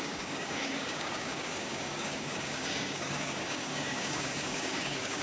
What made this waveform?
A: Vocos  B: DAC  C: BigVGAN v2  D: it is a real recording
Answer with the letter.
B